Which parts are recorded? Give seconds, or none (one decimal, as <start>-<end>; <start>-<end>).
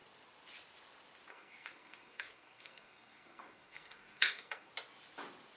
0.0-1.3; 4.7-5.6